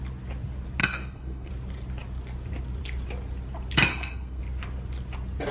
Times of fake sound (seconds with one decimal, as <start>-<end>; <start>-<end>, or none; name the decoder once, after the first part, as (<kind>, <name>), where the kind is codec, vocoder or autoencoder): 0.8-1.5 (codec, SNAC); 3.9-4.4